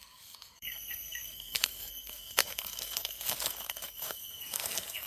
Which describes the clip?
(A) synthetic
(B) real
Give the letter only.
A